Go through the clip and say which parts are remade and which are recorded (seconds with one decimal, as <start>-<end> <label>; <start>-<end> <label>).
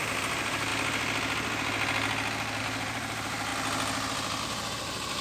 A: 0.0-0.7 remade; 0.7-2.6 recorded; 2.6-3.5 remade; 3.5-4.4 recorded; 4.4-5.2 remade